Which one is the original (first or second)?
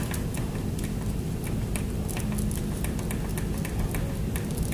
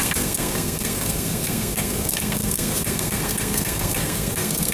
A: first